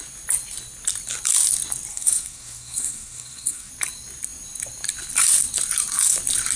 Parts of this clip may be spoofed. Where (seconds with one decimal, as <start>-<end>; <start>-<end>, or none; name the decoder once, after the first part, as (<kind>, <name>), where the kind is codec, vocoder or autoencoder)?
1.9-3.7 (codec, SNAC)